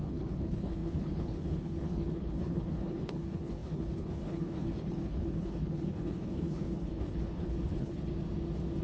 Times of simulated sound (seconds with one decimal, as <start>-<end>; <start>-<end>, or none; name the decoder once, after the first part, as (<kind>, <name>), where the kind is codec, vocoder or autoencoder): 0.0-8.1 (codec, HILCodec)